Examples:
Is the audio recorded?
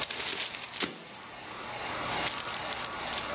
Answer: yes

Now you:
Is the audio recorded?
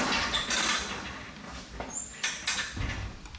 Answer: yes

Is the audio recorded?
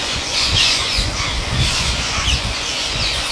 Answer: no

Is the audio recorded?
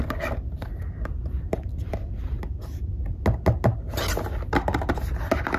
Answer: yes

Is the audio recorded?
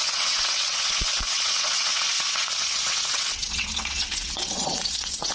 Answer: no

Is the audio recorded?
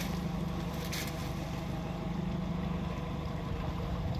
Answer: yes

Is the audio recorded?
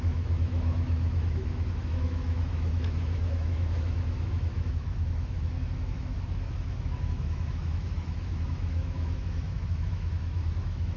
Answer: no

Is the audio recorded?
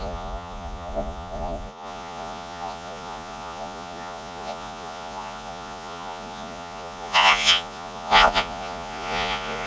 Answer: no